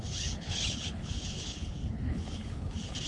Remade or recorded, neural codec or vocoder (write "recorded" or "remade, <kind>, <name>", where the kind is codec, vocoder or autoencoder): remade, codec, HILCodec